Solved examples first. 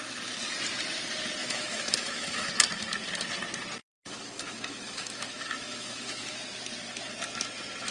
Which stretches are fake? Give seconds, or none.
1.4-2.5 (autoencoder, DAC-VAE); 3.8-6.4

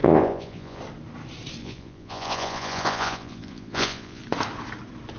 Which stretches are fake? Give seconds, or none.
0.0-0.8 (vocoder, Vocos); 1.6-4.2